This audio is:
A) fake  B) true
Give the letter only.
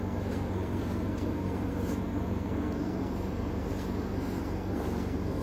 A